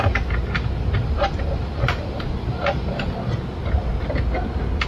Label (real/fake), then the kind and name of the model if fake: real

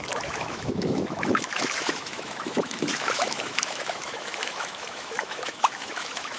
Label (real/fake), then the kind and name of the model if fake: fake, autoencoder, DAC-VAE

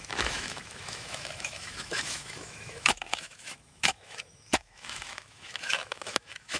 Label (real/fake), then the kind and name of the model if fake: fake, autoencoder, DAC-VAE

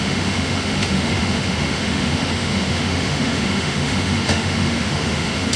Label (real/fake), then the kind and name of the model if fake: fake, autoencoder, DAC-VAE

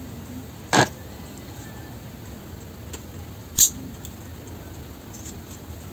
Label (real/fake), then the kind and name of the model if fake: real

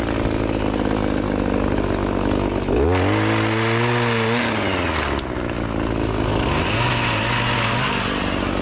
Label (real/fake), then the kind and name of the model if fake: real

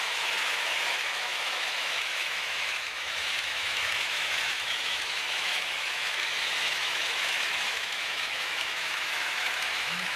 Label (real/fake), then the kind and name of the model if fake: fake, autoencoder, DAC-VAE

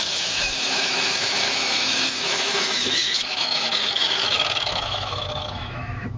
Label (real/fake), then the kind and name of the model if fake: fake, autoencoder, DAC-VAE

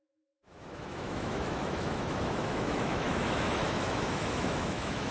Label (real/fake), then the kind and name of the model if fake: fake, autoencoder, DAC-VAE